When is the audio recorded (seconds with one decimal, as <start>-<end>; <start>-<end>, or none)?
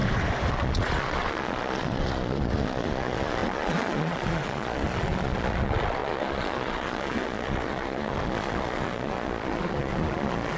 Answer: 0.0-0.5